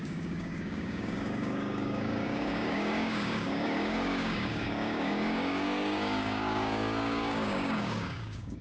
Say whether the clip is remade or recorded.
remade